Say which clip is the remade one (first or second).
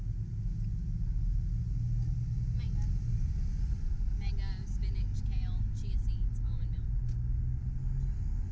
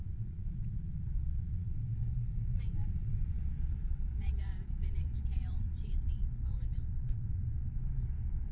second